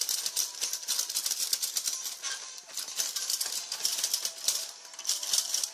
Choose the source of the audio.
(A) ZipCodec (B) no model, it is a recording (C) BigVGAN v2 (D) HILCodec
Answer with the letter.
B